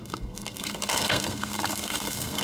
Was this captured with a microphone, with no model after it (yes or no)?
no